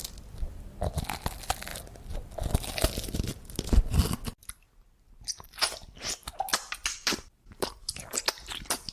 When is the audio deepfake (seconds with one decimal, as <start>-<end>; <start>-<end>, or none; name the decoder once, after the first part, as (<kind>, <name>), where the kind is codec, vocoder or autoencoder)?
6.5-8.1 (vocoder, BigVGAN v2)